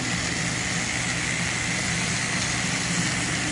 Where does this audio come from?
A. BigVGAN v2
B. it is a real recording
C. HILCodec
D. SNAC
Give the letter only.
B